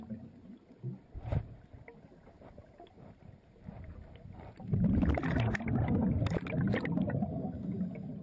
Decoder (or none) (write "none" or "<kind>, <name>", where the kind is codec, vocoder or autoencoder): none